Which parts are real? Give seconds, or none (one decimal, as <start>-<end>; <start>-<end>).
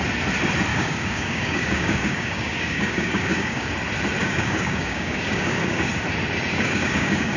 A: 0.0-0.7; 3.7-4.2; 5.9-6.5